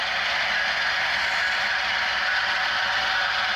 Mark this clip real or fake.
real